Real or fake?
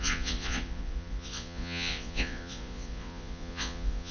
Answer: fake